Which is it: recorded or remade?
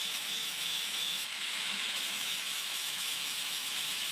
remade